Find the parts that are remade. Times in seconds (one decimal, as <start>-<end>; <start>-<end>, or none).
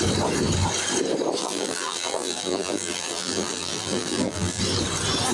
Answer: 1.4-4.6